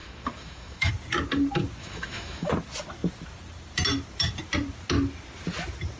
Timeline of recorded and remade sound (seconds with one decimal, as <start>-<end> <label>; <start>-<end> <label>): 0.0-0.9 remade; 0.9-1.8 recorded; 1.8-2.5 remade; 2.5-6.0 recorded